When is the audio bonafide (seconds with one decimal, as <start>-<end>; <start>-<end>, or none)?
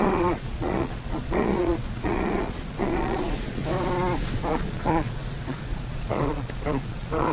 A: 3.6-4.5